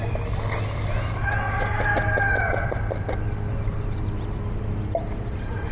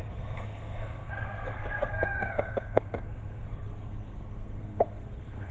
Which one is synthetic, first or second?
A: second